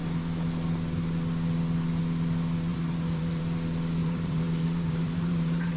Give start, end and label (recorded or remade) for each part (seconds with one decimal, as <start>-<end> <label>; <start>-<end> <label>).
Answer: 0.0-2.7 recorded; 2.7-3.4 remade; 3.4-4.0 recorded; 4.0-5.8 remade